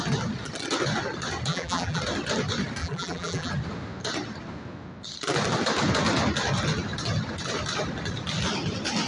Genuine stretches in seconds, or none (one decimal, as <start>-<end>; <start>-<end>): 0.0-1.5; 2.0-2.8; 3.5-9.1